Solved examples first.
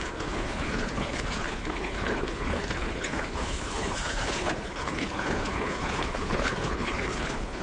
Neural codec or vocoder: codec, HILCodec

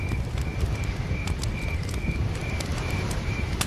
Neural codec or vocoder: none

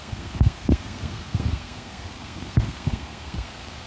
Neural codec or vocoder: codec, SNAC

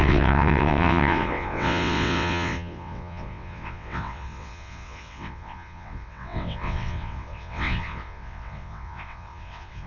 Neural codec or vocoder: vocoder, WaveNeXt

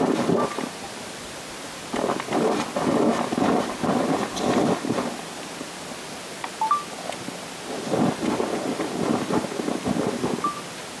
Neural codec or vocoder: none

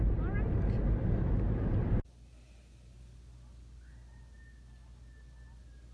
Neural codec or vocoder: none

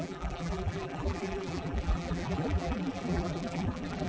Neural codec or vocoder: vocoder, BigVGAN v2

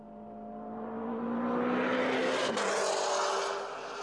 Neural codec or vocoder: none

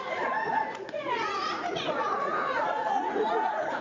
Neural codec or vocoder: vocoder, Vocos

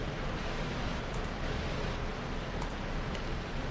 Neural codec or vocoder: vocoder, BigVGAN v2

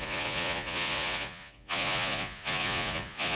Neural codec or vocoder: vocoder, Vocos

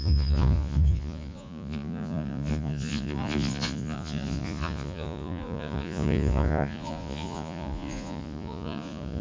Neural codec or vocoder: vocoder, Vocos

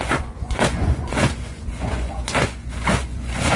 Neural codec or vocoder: vocoder, Vocos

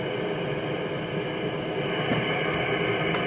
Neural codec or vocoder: none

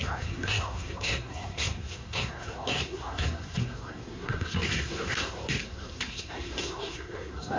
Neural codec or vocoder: codec, SNAC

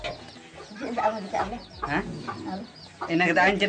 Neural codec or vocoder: none